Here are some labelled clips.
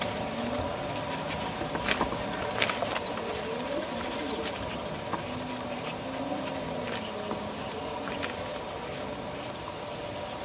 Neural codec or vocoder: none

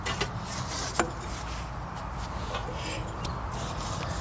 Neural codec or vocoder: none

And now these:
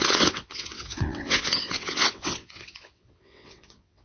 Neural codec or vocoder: vocoder, WaveNeXt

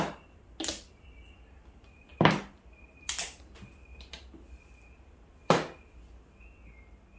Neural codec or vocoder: none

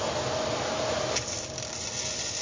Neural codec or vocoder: none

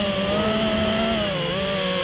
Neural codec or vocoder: none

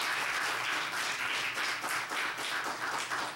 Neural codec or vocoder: none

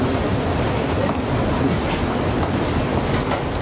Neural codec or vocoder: none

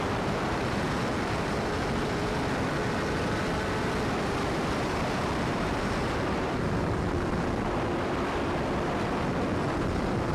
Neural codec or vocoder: vocoder, BigVGAN v2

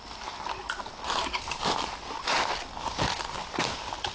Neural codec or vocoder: none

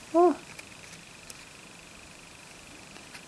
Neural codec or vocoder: vocoder, BigVGAN v2